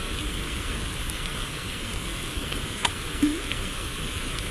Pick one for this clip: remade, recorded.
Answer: remade